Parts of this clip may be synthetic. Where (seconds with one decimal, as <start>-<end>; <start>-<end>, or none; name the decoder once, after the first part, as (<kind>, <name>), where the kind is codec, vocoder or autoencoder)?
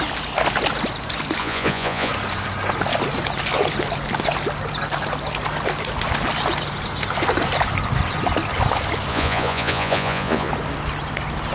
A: 1.4-2.1 (vocoder, Vocos); 9.1-10.5